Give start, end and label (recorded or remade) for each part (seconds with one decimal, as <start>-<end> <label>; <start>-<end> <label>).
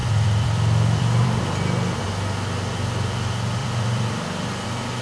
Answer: 0.0-1.4 remade; 1.4-3.6 recorded; 3.6-4.1 remade; 4.1-5.0 recorded